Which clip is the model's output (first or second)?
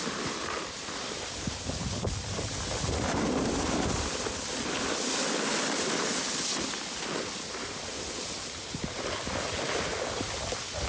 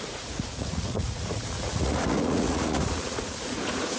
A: second